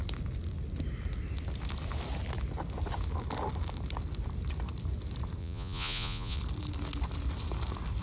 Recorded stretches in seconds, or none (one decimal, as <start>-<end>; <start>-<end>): 0.0-5.4; 6.4-8.0